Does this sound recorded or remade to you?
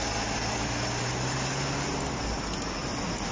recorded